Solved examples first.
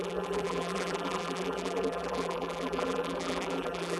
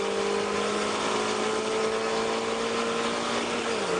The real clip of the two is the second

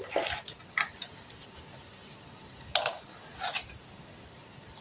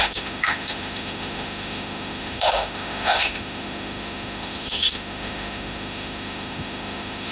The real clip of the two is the first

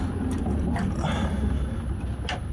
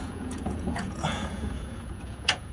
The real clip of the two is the first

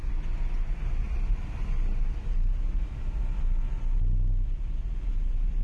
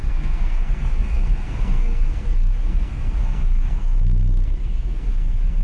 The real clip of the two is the first